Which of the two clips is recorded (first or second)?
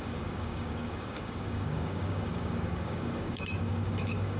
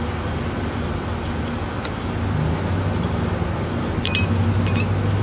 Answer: second